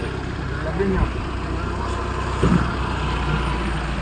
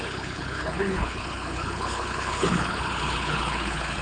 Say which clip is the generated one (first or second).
second